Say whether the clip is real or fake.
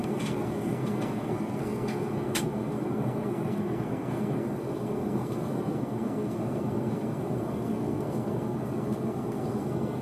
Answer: fake